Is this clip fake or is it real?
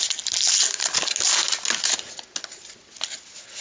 real